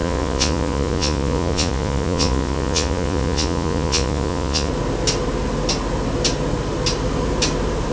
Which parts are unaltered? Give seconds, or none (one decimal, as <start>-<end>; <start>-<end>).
4.7-7.9

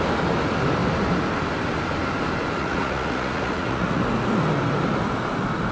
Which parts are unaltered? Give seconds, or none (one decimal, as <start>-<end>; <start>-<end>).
0.0-2.6; 4.0-5.7

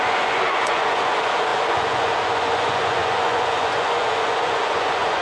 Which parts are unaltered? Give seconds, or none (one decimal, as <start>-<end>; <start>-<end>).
none

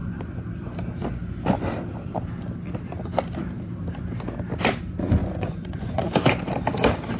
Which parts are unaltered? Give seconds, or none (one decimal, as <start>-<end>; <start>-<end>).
0.0-5.2; 6.0-7.2